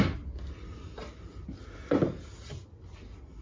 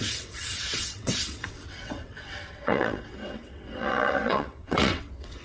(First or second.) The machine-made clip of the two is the second